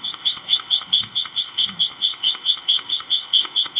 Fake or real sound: fake